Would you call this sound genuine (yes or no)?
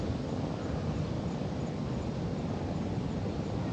yes